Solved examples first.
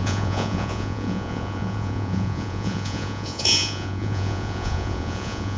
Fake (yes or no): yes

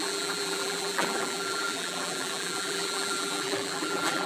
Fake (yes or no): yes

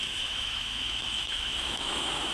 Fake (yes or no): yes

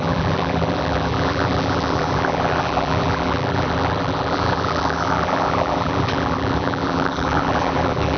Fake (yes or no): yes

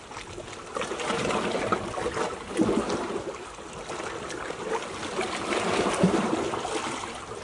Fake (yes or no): no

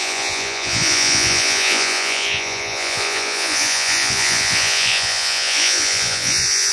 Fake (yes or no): yes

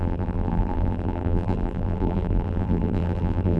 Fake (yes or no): yes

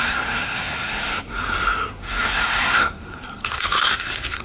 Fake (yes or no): yes